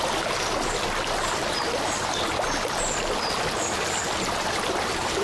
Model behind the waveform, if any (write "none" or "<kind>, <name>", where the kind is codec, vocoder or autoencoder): none